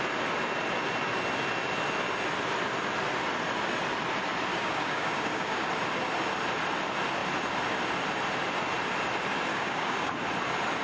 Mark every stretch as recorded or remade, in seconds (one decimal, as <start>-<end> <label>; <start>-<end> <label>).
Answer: 0.0-4.5 recorded; 4.5-5.7 remade; 5.7-9.5 recorded; 9.5-10.1 remade; 10.1-10.8 recorded